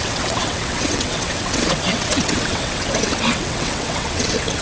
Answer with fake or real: fake